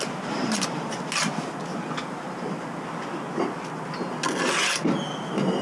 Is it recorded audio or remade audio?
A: recorded